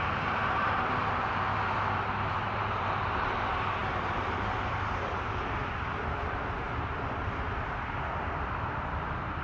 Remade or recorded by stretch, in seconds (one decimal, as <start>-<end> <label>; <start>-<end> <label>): 0.0-9.4 remade